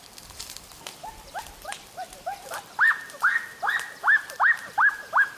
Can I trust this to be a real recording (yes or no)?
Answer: no